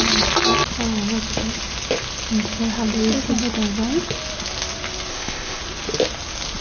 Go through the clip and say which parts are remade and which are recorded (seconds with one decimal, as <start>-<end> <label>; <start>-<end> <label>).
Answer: 0.0-5.1 recorded; 5.1-5.6 remade; 5.6-6.6 recorded